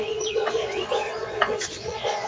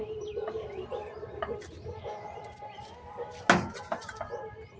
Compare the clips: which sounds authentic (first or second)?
second